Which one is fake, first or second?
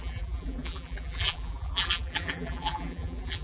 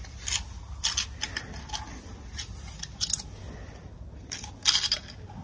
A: first